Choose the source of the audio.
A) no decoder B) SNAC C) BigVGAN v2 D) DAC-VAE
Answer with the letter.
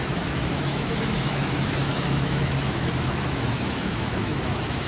D